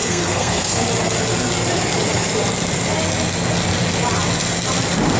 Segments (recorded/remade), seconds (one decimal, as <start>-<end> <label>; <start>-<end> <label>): 0.0-0.8 remade; 0.8-5.2 recorded